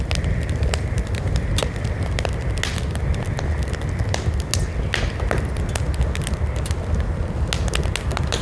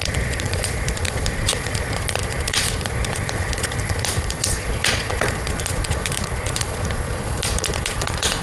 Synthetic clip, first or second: second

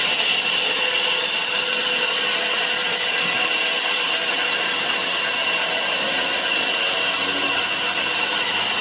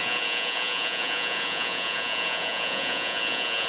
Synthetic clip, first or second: second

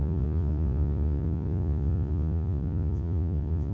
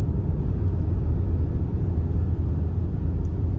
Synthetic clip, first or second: first